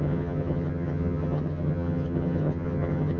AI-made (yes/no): yes